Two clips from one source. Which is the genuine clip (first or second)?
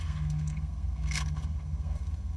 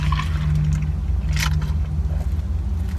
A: second